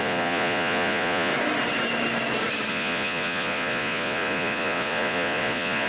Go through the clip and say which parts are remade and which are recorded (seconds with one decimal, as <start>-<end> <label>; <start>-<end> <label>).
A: 0.0-1.3 remade; 1.3-2.7 recorded; 2.7-5.9 remade